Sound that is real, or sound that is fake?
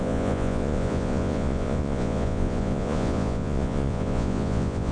fake